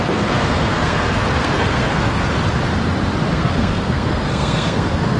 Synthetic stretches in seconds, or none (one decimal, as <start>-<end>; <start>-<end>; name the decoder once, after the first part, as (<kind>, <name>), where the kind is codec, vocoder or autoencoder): 0.0-2.3 (codec, SNAC); 3.3-5.2